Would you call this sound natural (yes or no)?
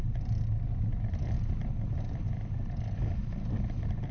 yes